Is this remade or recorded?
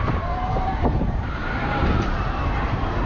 remade